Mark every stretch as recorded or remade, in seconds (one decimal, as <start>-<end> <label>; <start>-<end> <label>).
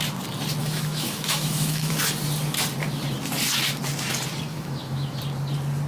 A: 0.0-0.6 recorded; 0.6-1.9 remade; 1.9-4.5 recorded; 4.5-5.2 remade; 5.2-5.9 recorded